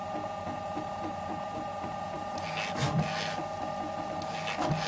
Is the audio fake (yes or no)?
no